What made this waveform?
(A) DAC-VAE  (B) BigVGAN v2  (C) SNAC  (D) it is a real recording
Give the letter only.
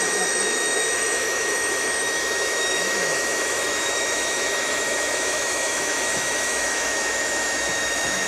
A